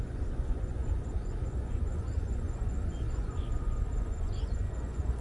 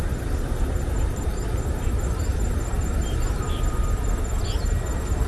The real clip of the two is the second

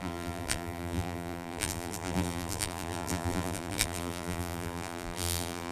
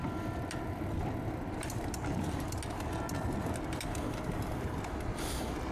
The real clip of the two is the second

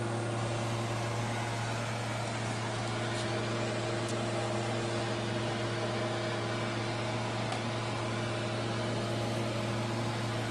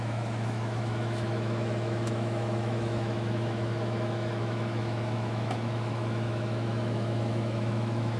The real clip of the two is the first